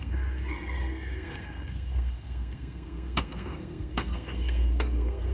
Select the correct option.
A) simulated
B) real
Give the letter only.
A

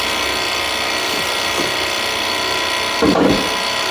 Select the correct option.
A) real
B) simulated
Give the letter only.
A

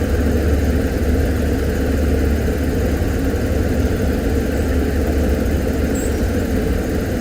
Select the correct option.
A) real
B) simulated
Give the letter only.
A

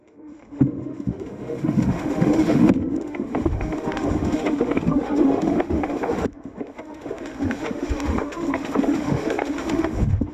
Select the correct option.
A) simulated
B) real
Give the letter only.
A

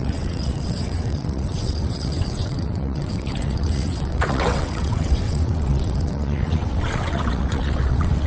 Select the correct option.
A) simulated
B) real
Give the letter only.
A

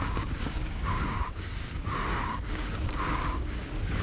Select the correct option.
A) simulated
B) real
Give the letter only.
A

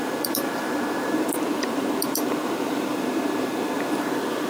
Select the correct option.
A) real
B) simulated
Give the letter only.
B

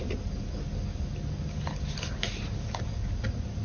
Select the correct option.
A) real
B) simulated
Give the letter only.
A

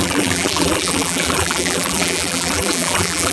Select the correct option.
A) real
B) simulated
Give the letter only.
B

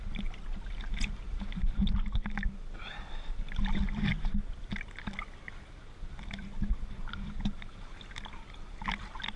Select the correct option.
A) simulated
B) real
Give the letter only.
B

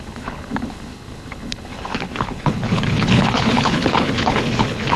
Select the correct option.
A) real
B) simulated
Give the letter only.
B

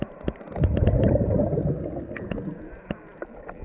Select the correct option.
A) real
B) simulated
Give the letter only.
A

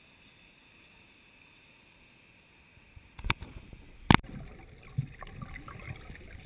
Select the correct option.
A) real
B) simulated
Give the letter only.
A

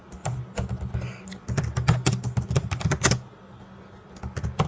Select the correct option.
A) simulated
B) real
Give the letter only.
B